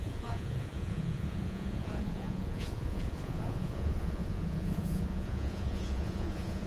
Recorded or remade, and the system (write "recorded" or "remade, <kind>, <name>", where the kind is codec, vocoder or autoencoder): remade, vocoder, Vocos